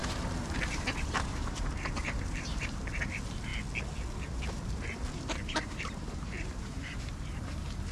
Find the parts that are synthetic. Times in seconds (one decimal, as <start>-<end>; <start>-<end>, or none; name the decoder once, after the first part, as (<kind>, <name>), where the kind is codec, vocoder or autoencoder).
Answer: 0.0-3.5 (vocoder, BigVGAN v2); 4.2-7.9